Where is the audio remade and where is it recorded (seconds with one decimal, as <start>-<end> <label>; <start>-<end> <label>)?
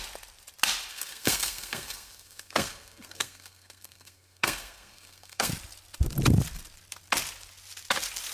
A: 0.0-0.9 recorded; 0.9-5.5 remade; 5.5-8.3 recorded